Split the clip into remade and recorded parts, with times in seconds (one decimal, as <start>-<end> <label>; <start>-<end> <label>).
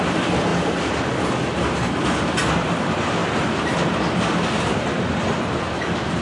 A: 0.0-3.2 recorded; 3.2-6.2 remade